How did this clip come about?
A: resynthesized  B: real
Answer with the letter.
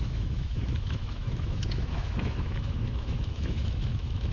A